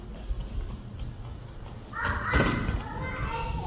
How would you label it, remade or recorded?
recorded